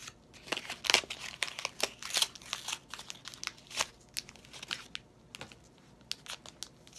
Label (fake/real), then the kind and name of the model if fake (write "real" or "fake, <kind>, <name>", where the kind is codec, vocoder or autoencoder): real